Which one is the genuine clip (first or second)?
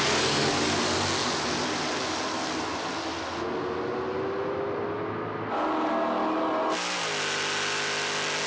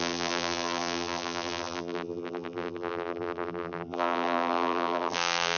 first